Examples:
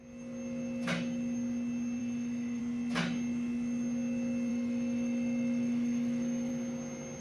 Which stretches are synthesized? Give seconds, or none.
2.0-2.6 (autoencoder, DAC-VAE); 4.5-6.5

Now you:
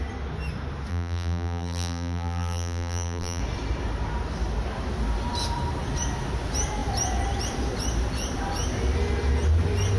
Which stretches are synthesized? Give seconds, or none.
0.9-3.4 (vocoder, BigVGAN v2)

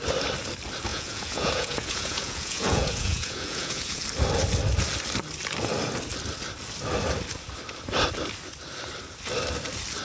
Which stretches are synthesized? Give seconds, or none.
0.9-4.0 (vocoder, Vocos)